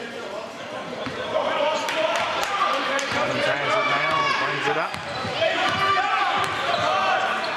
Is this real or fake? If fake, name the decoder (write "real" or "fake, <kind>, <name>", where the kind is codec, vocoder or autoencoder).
fake, vocoder, BigVGAN v2